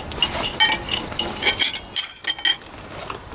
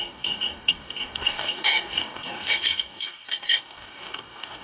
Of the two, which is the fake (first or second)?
second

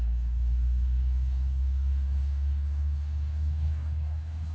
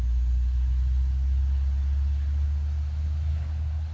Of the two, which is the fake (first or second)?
first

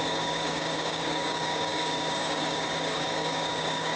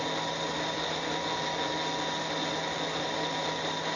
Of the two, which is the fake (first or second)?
first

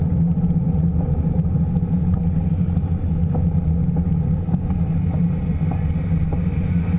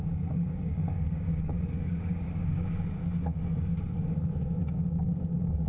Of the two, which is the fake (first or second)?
second